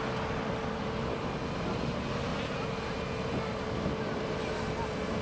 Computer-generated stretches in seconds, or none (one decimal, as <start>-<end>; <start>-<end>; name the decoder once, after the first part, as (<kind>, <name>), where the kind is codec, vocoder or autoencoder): 2.3-4.4 (vocoder, BigVGAN v2)